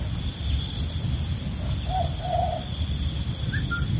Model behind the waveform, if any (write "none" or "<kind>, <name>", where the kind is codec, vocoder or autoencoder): none